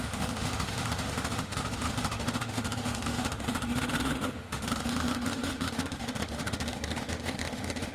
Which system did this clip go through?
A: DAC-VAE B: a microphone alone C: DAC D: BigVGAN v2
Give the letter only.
A